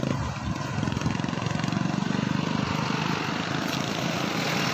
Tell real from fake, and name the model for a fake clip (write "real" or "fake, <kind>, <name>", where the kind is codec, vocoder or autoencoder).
real